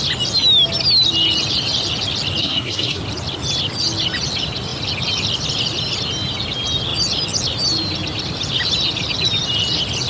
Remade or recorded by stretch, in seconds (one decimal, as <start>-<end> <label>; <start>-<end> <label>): 0.0-2.4 recorded; 2.4-3.0 remade; 3.0-10.1 recorded